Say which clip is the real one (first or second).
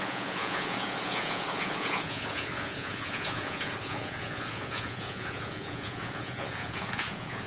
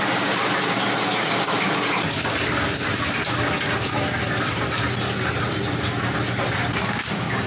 second